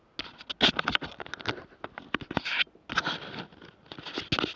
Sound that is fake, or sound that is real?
real